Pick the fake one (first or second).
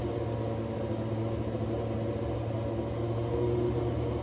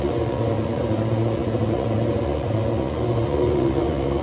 second